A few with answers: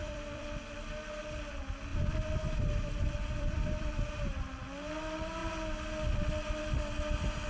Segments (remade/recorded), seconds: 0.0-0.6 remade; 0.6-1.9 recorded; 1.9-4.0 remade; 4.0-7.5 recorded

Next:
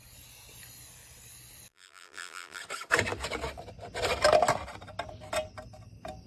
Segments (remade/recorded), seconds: 0.0-1.7 recorded; 1.7-2.6 remade; 2.6-6.3 recorded

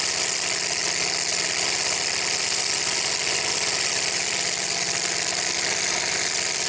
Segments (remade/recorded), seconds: 0.0-0.8 remade; 0.8-1.3 recorded; 1.3-6.7 remade